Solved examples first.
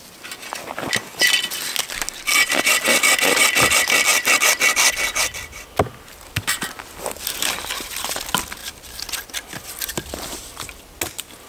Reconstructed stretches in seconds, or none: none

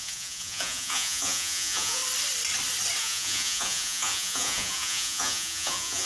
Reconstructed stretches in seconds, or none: 0.0-2.0; 3.0-6.1